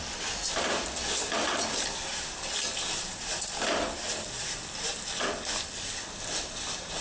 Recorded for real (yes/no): yes